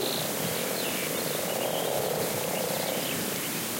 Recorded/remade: recorded